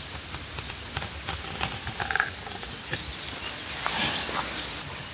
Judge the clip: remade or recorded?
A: recorded